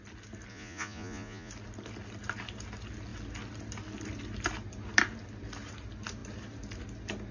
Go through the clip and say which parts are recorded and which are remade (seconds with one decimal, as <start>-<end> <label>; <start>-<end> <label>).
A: 0.0-0.5 recorded; 0.5-1.5 remade; 1.5-7.3 recorded